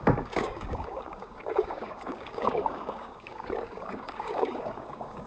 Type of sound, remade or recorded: remade